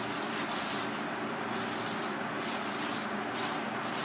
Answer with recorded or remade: recorded